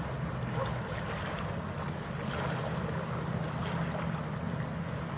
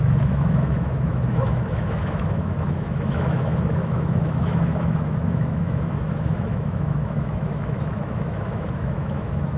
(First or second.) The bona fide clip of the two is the first